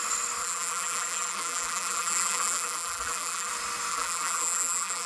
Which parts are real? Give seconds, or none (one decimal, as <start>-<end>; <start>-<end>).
0.0-0.4; 3.5-3.9